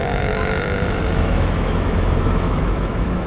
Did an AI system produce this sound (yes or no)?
yes